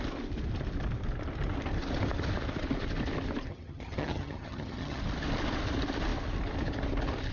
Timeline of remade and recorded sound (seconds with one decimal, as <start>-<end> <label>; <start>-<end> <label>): 0.0-3.5 recorded; 3.5-5.0 remade; 5.0-7.3 recorded